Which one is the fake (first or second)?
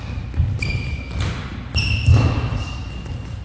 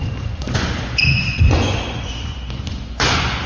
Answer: second